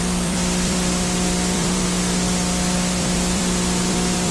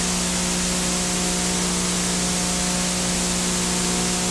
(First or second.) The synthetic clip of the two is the first